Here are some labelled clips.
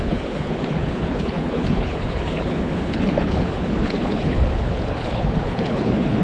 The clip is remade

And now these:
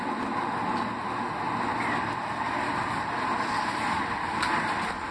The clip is recorded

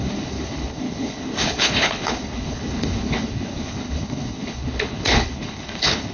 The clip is remade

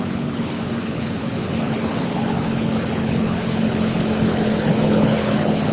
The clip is remade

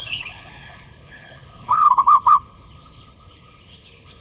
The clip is remade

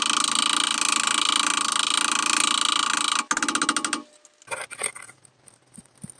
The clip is recorded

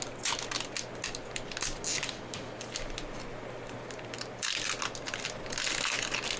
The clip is recorded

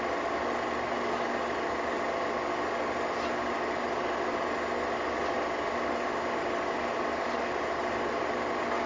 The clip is recorded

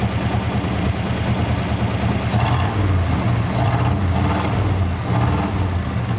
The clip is recorded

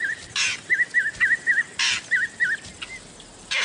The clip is recorded